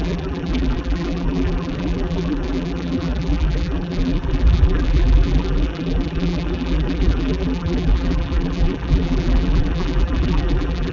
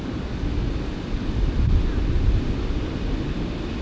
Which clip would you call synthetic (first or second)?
first